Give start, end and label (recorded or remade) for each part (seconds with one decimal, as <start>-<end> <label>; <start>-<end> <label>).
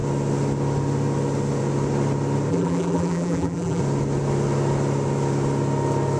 0.0-2.5 recorded; 2.5-3.8 remade; 3.8-6.2 recorded